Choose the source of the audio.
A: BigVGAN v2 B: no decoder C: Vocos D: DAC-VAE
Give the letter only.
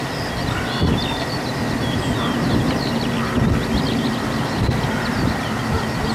B